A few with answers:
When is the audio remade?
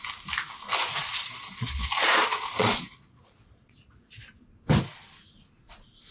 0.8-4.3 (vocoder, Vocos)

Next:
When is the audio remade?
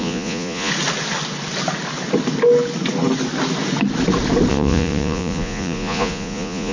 0.0-0.7 (vocoder, Vocos); 4.5-6.7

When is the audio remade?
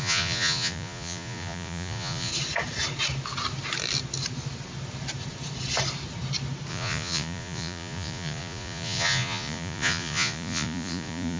0.0-2.3 (vocoder, Vocos); 6.7-11.4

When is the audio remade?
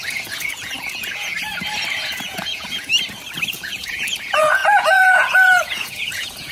0.0-1.3 (vocoder, Vocos); 2.0-2.9; 3.5-6.5